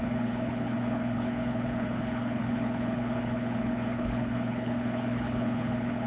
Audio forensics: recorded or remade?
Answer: remade